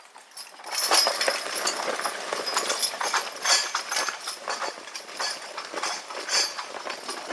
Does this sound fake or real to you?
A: real